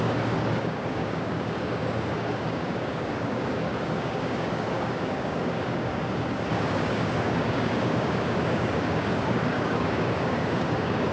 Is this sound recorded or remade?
remade